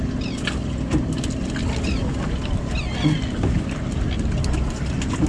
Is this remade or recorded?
recorded